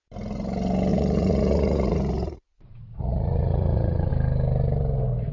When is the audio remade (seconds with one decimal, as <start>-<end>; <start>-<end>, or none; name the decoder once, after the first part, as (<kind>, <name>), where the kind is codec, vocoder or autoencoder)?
0.9-4.1 (vocoder, Vocos)